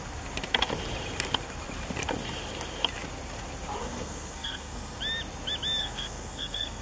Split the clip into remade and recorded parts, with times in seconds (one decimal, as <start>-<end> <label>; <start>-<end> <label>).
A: 0.0-3.8 recorded; 3.8-5.0 remade; 5.0-5.8 recorded; 5.8-6.8 remade